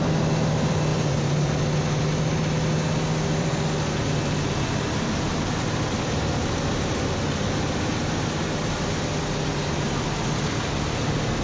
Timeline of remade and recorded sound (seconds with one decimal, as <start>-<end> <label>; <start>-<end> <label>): 0.0-0.9 recorded; 0.9-1.5 remade; 1.5-11.4 recorded